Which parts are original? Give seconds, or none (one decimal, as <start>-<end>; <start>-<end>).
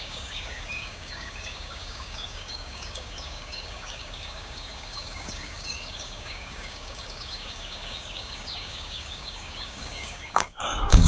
none